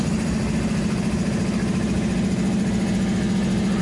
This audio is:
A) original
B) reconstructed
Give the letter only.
A